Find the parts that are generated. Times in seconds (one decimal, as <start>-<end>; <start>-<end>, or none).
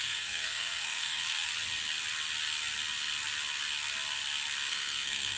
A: 0.0-1.5; 4.7-5.4